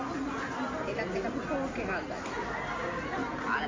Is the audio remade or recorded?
recorded